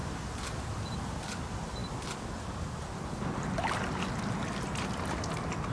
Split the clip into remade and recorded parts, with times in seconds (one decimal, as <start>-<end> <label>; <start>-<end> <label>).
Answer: 0.0-5.7 recorded